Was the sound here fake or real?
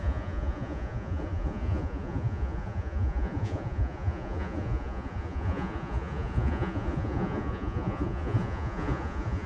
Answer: fake